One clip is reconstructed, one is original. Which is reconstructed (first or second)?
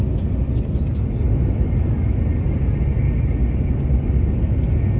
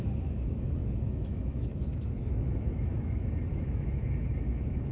second